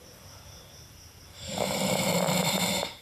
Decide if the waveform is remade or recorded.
remade